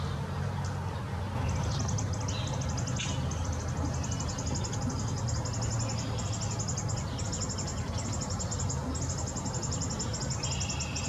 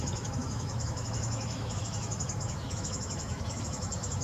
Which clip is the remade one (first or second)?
second